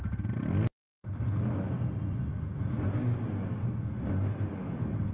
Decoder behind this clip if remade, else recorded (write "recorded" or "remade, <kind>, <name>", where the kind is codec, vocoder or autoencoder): recorded